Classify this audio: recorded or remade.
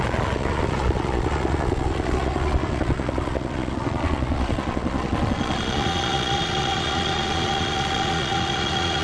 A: remade